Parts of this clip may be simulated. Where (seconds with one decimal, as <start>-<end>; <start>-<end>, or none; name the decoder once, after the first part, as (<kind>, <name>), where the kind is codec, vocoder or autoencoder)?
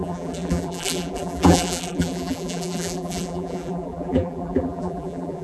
0.0-5.4 (vocoder, BigVGAN v2)